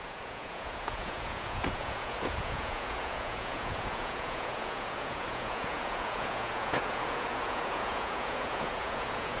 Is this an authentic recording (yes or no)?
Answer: no